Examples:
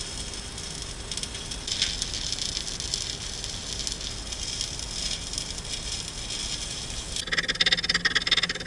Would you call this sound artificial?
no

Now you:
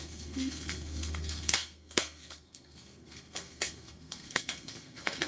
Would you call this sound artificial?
yes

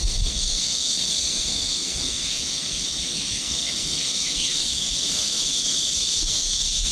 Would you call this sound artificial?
yes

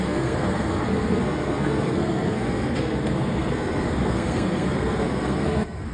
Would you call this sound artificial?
yes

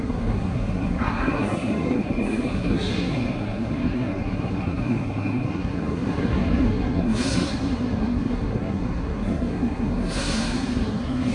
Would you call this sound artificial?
yes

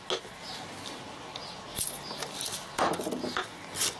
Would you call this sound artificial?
no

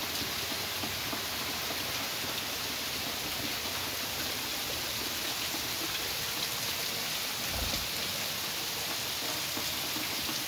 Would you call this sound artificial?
no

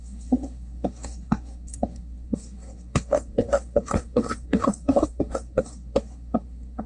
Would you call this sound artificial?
yes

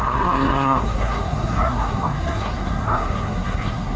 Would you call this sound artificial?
yes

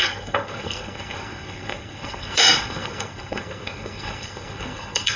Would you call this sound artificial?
yes